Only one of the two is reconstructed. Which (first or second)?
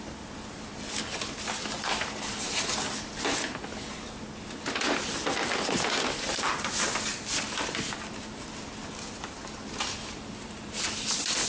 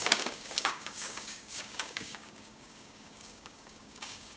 second